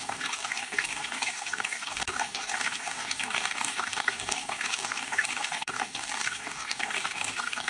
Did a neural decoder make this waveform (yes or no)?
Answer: yes